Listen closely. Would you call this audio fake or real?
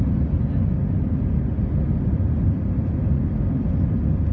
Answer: real